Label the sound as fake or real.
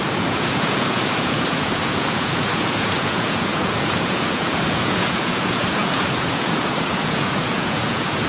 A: fake